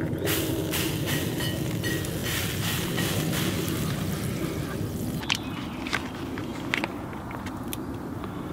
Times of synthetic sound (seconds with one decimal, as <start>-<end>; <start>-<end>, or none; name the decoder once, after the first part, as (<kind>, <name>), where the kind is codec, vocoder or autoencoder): none